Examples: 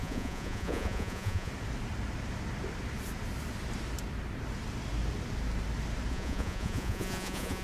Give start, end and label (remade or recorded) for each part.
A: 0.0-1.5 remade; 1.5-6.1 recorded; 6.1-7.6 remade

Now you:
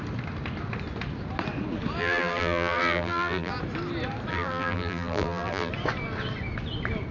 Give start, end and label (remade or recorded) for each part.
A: 0.0-2.0 recorded; 2.0-3.5 remade; 3.5-4.3 recorded; 4.3-5.7 remade; 5.7-7.1 recorded

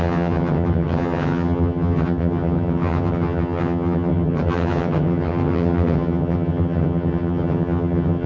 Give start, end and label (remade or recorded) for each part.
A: 0.0-8.3 remade